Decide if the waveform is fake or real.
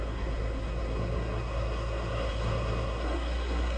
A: fake